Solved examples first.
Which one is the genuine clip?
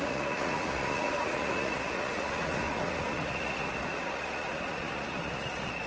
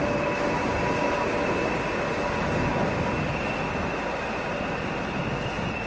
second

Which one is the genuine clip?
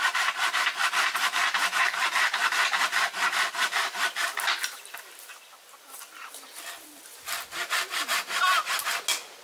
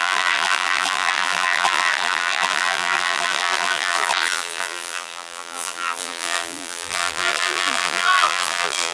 first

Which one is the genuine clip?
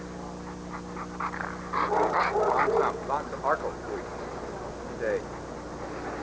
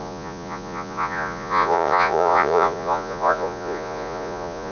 first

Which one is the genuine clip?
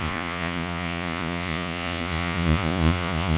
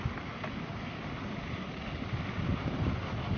second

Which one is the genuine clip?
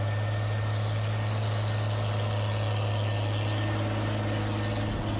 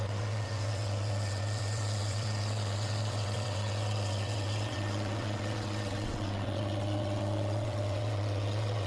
first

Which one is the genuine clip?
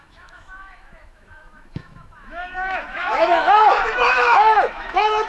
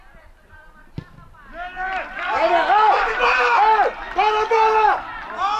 second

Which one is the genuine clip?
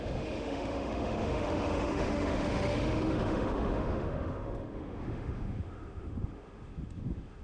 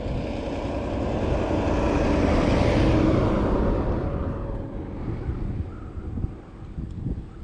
second